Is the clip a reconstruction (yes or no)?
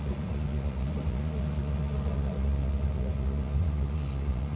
yes